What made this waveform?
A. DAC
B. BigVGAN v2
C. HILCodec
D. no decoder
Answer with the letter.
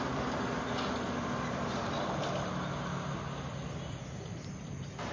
D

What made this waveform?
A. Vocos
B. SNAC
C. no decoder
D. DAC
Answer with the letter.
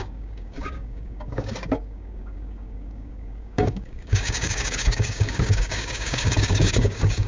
D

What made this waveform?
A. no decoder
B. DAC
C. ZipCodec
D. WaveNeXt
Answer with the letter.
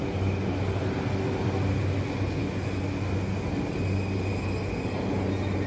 A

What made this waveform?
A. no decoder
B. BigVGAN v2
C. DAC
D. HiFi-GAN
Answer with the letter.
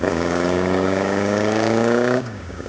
C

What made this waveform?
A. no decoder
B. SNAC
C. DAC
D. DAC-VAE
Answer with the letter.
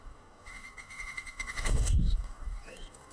C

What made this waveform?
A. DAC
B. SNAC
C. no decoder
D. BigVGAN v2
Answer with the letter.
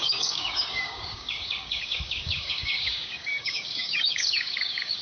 A